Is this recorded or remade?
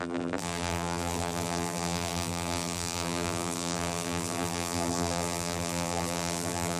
remade